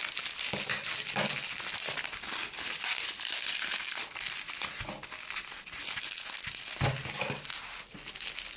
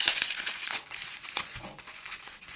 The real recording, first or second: first